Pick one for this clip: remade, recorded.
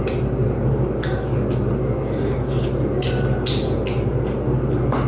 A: recorded